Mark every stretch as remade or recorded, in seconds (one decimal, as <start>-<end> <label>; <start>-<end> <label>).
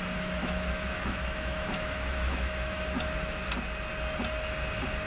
0.0-0.4 recorded; 0.4-3.5 remade; 3.5-5.1 recorded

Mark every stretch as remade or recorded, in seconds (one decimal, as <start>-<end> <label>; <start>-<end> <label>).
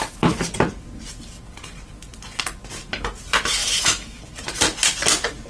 0.0-3.6 recorded; 3.6-4.2 remade; 4.2-5.5 recorded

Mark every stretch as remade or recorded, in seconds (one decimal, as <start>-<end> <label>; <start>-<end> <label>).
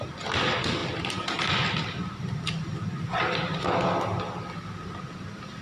0.0-5.6 recorded